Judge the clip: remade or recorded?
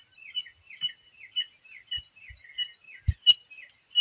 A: recorded